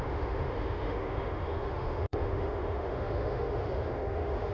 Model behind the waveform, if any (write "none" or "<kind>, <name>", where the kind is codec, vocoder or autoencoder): autoencoder, DAC-VAE